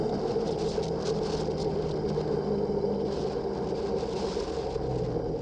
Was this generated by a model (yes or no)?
no